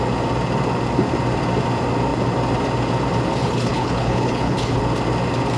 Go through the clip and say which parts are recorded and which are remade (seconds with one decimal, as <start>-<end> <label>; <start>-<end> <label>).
0.0-3.4 recorded; 3.4-4.8 remade; 4.8-5.6 recorded

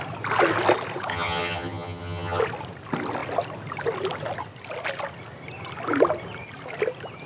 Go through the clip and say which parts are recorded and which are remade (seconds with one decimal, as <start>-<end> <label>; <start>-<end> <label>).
0.0-1.1 recorded; 1.1-2.4 remade; 2.4-7.3 recorded

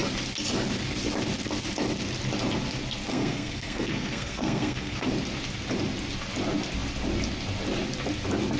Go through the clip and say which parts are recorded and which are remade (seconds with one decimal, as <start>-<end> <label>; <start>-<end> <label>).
0.0-3.1 recorded; 3.1-5.1 remade; 5.1-8.6 recorded

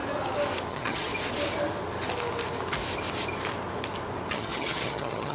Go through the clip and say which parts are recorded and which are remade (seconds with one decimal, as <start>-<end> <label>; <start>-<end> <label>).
0.0-0.7 recorded; 0.7-1.1 remade; 1.1-4.3 recorded; 4.3-5.3 remade